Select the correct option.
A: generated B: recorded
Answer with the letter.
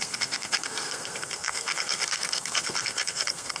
A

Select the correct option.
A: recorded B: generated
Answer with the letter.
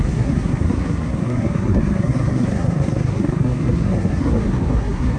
B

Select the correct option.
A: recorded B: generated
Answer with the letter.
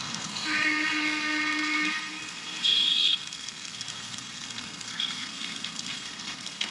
B